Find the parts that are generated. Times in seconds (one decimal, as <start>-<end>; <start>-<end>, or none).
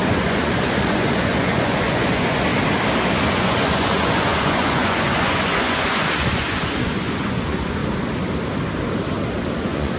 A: 0.0-2.5; 3.3-7.8; 9.6-10.0